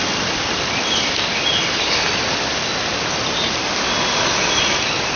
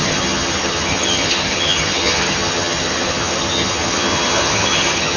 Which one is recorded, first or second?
first